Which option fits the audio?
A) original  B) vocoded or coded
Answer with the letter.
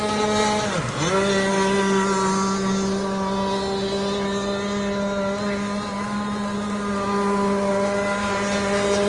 A